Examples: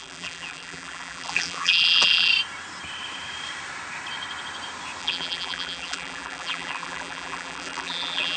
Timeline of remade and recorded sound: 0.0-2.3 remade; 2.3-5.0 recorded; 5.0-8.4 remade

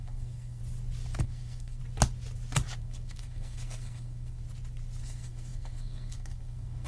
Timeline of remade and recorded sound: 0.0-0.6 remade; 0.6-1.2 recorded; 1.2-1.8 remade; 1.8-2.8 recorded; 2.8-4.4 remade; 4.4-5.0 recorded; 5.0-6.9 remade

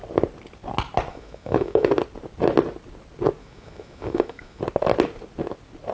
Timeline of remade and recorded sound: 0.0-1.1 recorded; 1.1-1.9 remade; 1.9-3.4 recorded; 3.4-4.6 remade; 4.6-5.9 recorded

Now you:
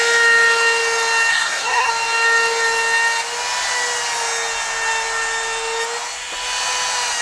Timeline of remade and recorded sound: 0.0-1.3 recorded; 1.3-1.9 remade; 1.9-7.2 recorded

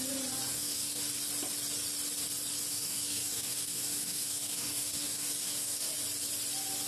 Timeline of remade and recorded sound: 0.0-0.5 recorded; 0.5-1.0 remade; 1.0-2.7 recorded; 2.7-5.9 remade; 5.9-6.9 recorded

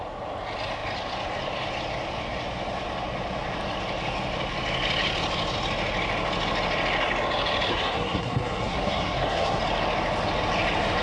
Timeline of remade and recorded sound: 0.0-7.7 recorded; 7.7-9.6 remade; 9.6-11.0 recorded